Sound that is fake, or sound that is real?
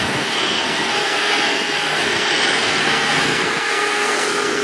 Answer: fake